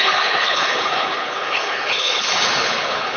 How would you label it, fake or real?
fake